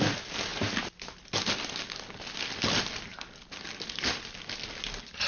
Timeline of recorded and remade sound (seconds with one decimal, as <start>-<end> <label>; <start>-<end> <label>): 0.0-5.3 recorded